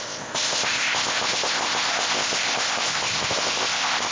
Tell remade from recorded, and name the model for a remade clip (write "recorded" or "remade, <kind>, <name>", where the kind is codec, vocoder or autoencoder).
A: remade, codec, ZipCodec